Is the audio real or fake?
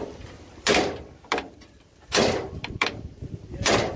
fake